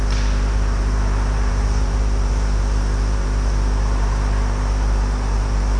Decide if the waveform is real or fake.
fake